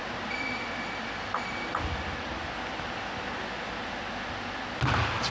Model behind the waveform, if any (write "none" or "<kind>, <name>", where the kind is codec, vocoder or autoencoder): none